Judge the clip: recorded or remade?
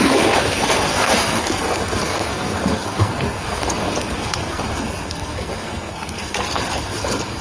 remade